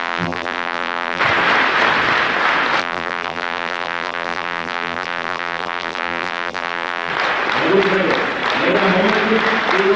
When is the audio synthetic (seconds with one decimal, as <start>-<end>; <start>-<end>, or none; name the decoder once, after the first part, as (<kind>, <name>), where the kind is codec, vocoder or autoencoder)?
0.0-1.2 (vocoder, BigVGAN v2); 2.8-7.1